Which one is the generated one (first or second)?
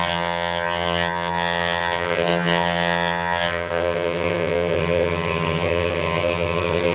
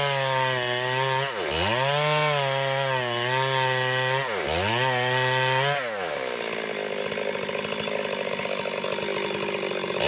first